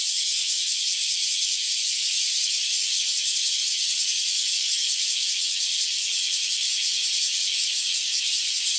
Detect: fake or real fake